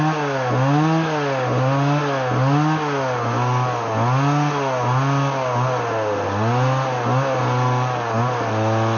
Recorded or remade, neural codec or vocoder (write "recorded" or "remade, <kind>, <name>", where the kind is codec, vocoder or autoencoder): recorded